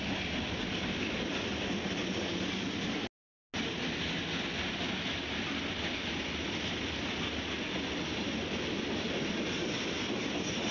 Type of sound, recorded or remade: recorded